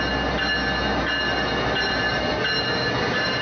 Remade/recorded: recorded